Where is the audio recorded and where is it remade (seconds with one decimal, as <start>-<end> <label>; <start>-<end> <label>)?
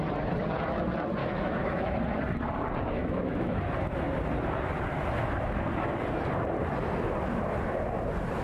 0.0-1.2 recorded; 1.2-1.9 remade; 1.9-3.0 recorded; 3.0-3.6 remade; 3.6-8.4 recorded